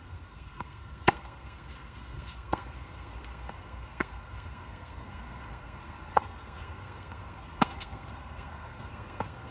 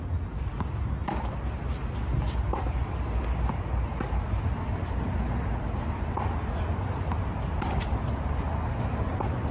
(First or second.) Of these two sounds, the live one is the second